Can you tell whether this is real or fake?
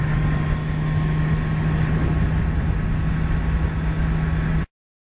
real